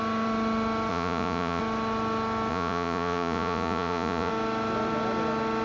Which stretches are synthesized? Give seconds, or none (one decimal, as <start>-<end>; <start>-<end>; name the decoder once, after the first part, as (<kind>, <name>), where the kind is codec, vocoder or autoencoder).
0.9-1.6 (vocoder, Vocos); 2.5-4.3